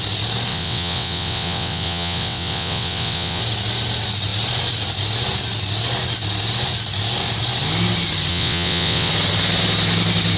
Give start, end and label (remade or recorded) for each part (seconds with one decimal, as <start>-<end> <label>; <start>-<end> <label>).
0.0-0.5 recorded; 0.5-3.4 remade; 3.4-8.3 recorded; 8.3-9.1 remade; 9.1-10.4 recorded